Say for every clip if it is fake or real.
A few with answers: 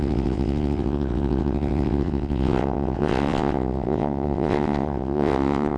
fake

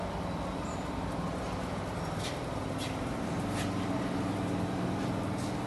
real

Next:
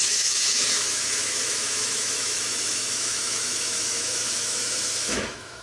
fake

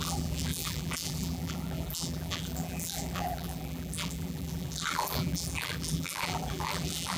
fake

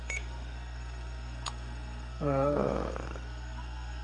fake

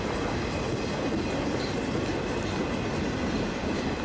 real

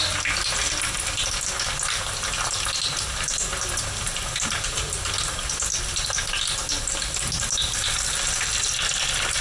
real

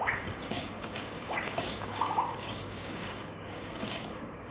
fake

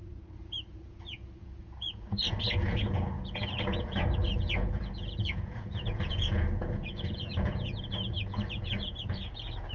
fake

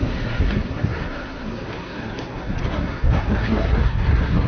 fake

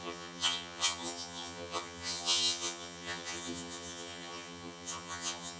fake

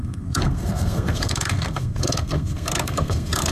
fake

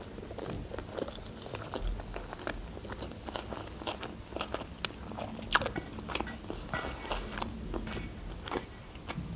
real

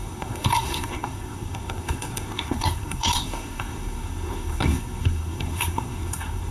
fake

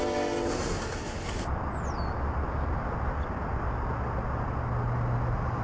real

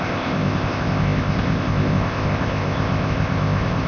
fake